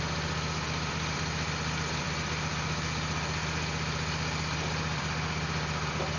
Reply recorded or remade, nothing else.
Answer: recorded